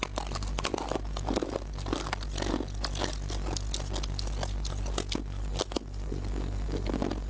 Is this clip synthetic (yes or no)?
no